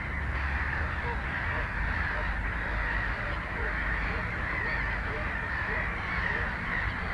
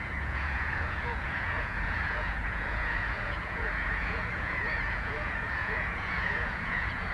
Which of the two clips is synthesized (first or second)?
second